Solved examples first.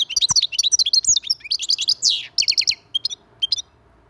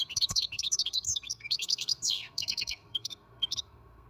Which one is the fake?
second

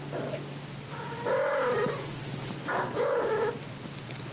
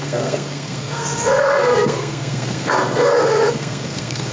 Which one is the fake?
second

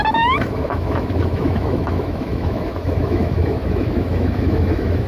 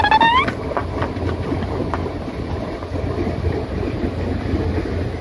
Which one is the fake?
first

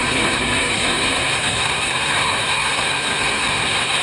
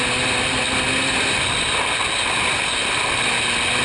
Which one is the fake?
first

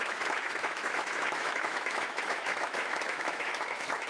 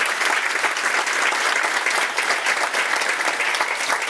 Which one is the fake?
first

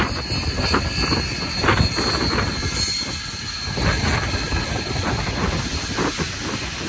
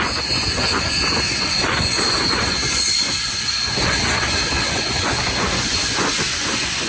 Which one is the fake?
second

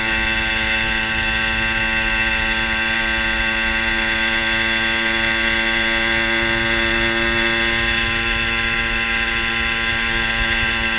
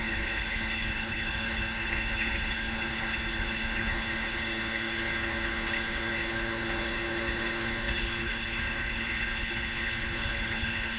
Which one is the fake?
second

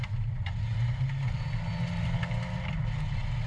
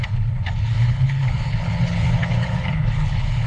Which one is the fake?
second